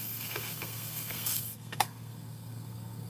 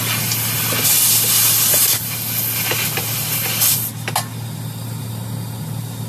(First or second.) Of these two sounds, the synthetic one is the first